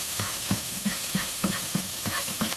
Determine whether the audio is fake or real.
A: fake